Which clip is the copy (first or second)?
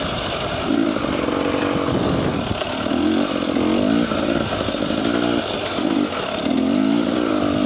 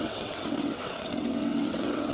second